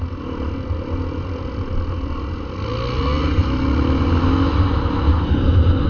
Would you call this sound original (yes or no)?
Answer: yes